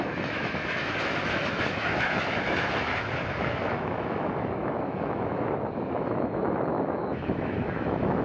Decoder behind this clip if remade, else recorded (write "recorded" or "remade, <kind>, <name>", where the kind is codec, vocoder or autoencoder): remade, autoencoder, DAC-VAE